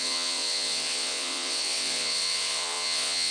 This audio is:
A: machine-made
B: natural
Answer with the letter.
A